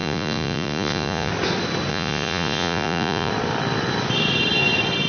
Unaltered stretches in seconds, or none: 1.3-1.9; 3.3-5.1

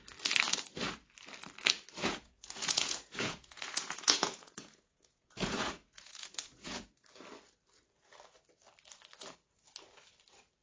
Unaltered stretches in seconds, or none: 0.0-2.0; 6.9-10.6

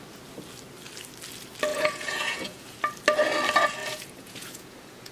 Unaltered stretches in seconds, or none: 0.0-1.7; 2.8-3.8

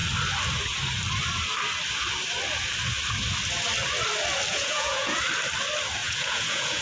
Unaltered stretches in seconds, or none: 0.0-4.5; 5.2-6.0